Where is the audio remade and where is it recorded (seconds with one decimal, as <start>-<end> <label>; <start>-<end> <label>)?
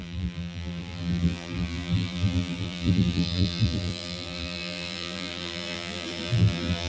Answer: 0.0-6.9 remade